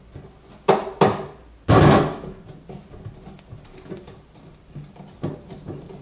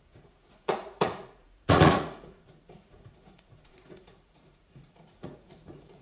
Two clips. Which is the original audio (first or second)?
first